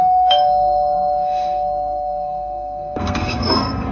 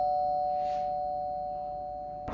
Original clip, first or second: second